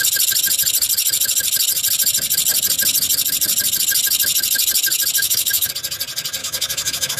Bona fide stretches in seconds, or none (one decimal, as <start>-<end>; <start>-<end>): 0.0-5.2; 5.7-6.4